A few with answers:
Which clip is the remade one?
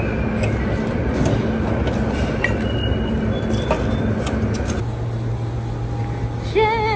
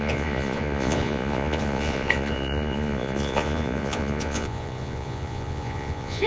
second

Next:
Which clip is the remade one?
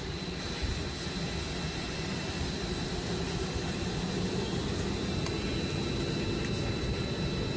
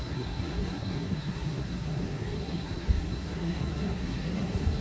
second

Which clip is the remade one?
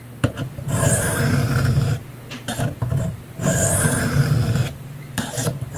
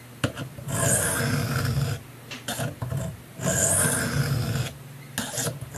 first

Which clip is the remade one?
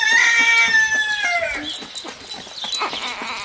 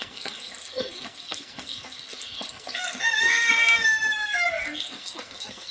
second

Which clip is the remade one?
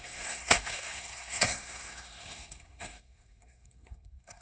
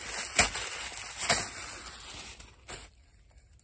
first